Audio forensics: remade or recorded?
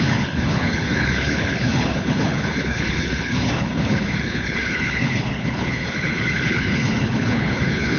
remade